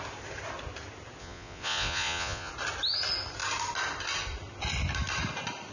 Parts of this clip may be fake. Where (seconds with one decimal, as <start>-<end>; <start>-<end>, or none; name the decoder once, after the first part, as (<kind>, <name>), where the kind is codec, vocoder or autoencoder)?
1.2-2.5 (vocoder, Vocos)